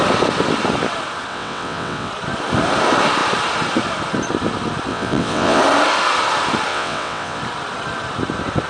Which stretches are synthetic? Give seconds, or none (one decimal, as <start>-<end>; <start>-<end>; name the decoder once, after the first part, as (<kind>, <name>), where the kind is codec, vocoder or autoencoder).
1.3-2.1 (vocoder, WaveNeXt); 4.9-5.6; 6.7-7.4